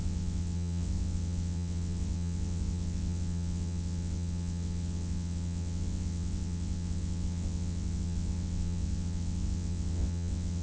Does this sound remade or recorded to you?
remade